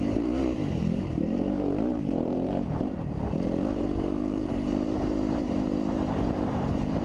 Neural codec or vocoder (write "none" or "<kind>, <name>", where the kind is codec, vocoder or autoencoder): vocoder, BigVGAN v2